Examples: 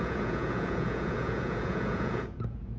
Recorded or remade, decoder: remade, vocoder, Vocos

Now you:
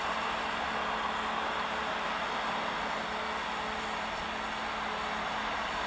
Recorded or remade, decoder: recorded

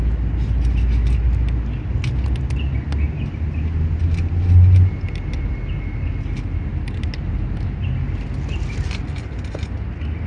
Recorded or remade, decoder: recorded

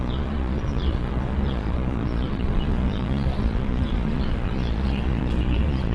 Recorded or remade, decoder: remade, vocoder, Vocos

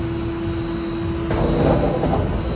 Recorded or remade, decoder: recorded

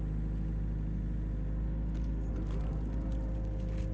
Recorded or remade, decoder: recorded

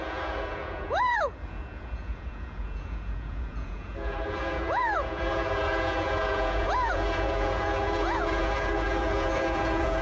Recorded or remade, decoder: remade, vocoder, Vocos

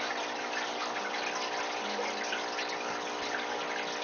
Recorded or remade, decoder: recorded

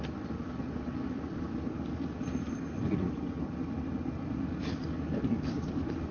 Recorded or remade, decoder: recorded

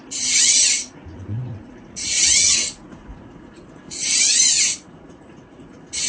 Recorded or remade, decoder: remade, vocoder, Vocos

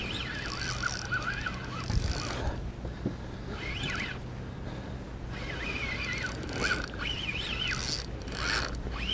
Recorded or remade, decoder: recorded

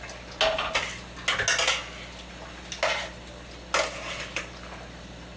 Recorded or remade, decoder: recorded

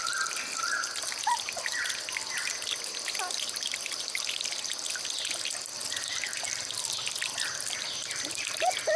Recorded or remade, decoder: recorded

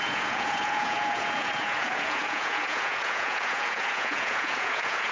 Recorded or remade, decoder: remade, vocoder, Vocos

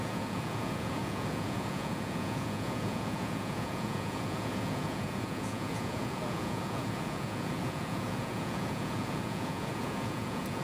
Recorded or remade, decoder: remade, vocoder, Vocos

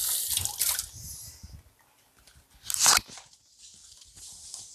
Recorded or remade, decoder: recorded